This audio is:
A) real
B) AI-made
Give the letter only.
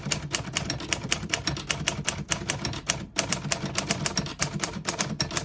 B